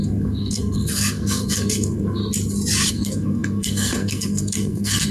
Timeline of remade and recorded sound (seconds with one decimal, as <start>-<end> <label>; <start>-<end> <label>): 0.0-2.2 remade; 2.2-2.9 recorded; 2.9-5.1 remade